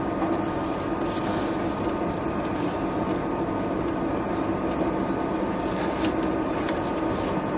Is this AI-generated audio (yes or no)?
no